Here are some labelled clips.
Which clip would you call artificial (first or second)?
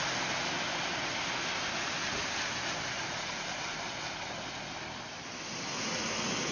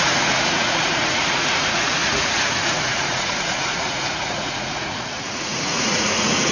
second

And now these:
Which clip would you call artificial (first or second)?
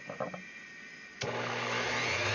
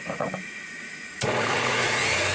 second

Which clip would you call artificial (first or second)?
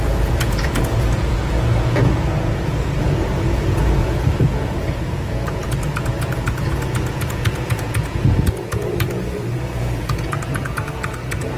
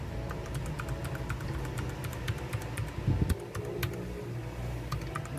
first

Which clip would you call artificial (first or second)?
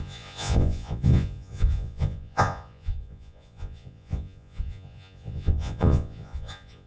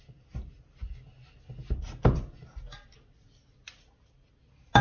first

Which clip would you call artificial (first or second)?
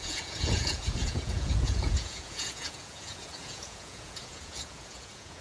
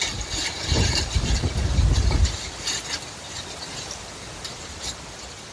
first